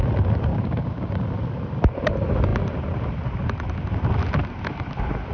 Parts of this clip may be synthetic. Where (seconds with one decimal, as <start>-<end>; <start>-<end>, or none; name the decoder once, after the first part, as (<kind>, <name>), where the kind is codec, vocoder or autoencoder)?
0.5-1.1 (codec, DAC)